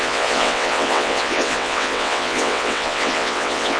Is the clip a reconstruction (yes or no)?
yes